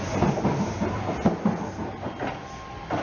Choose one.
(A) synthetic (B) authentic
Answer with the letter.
B